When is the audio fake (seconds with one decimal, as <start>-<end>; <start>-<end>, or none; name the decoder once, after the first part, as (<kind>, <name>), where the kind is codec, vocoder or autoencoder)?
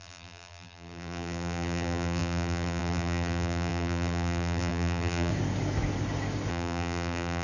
0.0-5.3 (vocoder, BigVGAN v2); 6.5-7.4